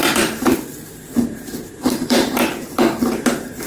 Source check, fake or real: fake